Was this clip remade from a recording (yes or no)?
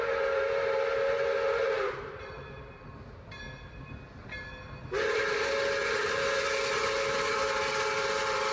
no